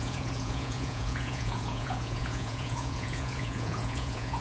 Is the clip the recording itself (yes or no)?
no